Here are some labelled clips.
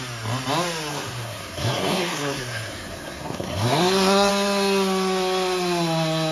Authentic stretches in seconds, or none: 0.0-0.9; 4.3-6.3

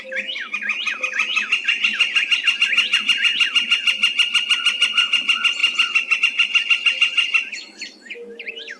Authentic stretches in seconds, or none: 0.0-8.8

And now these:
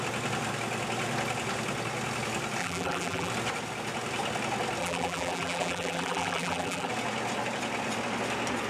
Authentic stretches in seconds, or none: 0.0-2.6; 3.3-4.8; 6.9-8.7

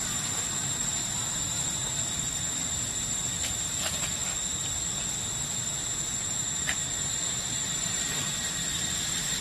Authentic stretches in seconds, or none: none

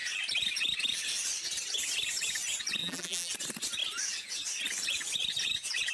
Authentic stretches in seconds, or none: 0.0-2.8; 3.3-5.9

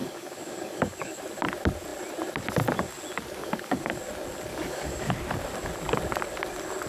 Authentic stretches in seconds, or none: 1.2-3.4; 4.0-4.5; 5.1-6.9